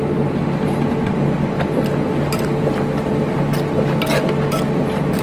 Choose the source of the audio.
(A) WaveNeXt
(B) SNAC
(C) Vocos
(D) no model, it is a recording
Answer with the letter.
D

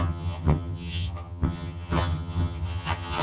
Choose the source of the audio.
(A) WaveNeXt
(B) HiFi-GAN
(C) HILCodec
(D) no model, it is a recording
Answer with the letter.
B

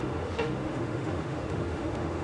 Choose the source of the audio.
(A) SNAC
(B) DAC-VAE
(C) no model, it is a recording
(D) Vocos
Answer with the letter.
B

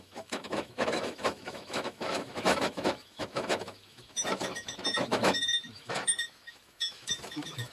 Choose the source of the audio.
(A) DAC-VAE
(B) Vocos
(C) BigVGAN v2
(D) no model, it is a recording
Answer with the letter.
A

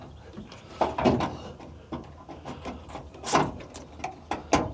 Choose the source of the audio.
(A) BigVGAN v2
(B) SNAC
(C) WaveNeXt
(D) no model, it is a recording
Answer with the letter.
D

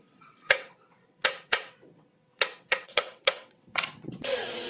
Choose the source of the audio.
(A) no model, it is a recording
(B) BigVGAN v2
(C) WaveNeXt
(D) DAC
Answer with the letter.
C